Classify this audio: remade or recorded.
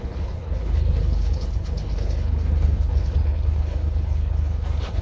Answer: remade